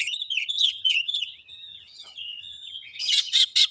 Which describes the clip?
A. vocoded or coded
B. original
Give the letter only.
A